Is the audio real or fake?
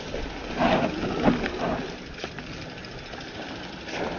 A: real